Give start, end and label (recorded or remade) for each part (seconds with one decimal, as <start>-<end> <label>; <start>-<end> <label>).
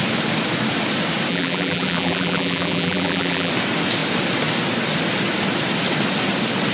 0.0-1.3 recorded; 1.3-3.5 remade; 3.5-6.7 recorded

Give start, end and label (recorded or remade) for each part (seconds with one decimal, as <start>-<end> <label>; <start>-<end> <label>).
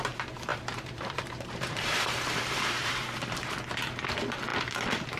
0.0-0.5 recorded; 0.5-3.6 remade; 3.6-5.2 recorded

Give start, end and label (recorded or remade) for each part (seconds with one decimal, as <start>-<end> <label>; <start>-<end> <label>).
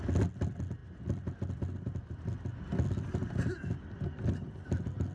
0.0-5.1 recorded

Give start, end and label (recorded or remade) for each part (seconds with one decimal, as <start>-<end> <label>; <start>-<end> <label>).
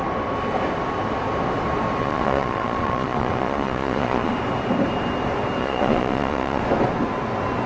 0.0-2.0 recorded; 2.0-4.3 remade; 4.3-5.6 recorded; 5.6-6.6 remade; 6.6-7.7 recorded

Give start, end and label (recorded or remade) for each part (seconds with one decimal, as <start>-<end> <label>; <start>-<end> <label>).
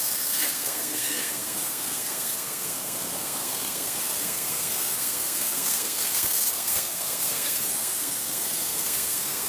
0.0-9.5 remade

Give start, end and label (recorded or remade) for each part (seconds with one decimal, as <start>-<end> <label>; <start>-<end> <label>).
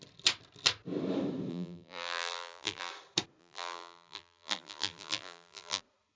0.0-1.5 recorded; 1.5-2.9 remade; 2.9-3.4 recorded; 3.4-5.8 remade; 5.8-6.2 recorded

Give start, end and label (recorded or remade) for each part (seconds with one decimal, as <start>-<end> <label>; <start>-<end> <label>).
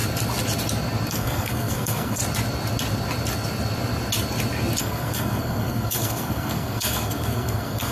0.0-1.1 recorded; 1.1-2.2 remade; 2.2-4.8 recorded; 4.8-7.9 remade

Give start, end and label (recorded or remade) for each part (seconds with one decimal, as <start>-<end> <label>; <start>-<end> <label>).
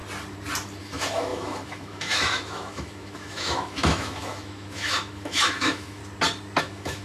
0.0-0.8 recorded; 0.8-6.0 remade; 6.0-6.6 recorded; 6.6-7.0 remade